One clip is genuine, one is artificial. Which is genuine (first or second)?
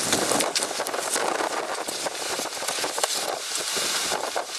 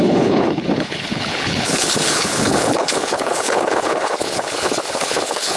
first